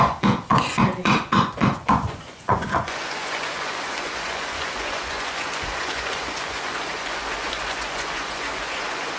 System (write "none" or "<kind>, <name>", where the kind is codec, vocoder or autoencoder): vocoder, Vocos